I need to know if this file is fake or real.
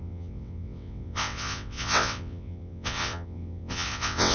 fake